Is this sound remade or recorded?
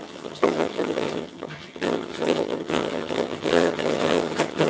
remade